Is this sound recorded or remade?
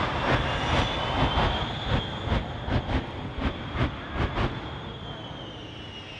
recorded